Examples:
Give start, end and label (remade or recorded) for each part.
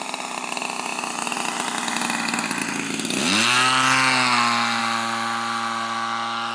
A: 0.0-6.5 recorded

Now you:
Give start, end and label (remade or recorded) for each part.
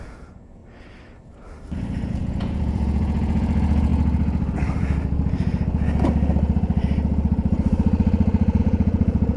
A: 0.0-0.6 remade; 0.6-2.1 recorded; 2.1-3.9 remade; 3.9-8.6 recorded; 8.6-9.4 remade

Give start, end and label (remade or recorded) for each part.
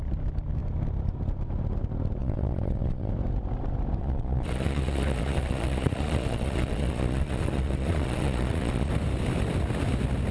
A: 0.0-2.2 recorded; 2.2-3.1 remade; 3.1-4.0 recorded; 4.0-8.9 remade; 8.9-10.3 recorded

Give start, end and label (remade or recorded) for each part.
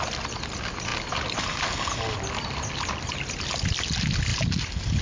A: 0.0-5.0 recorded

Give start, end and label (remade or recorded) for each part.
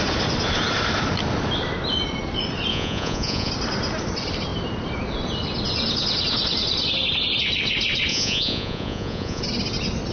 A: 0.0-2.7 recorded; 2.7-3.5 remade; 3.5-8.1 recorded; 8.1-9.4 remade; 9.4-10.1 recorded